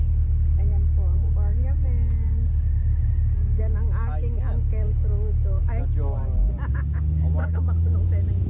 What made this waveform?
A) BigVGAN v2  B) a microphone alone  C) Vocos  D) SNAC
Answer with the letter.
B